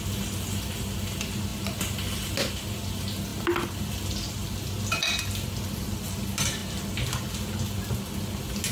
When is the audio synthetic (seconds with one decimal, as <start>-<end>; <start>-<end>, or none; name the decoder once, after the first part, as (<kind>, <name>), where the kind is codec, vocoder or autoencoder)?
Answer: none